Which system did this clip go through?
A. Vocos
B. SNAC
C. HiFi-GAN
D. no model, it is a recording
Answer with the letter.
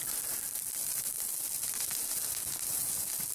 D